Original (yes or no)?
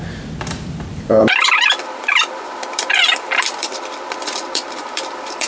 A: no